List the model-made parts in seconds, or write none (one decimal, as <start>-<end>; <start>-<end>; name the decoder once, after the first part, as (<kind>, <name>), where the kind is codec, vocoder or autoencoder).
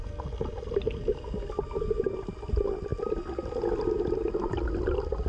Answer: none